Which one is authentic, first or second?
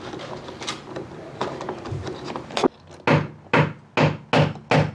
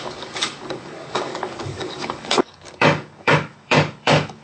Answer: first